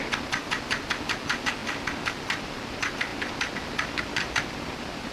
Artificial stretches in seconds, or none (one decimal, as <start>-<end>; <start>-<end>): none